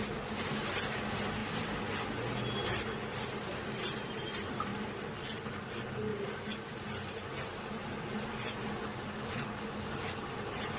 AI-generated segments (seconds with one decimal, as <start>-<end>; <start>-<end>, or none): none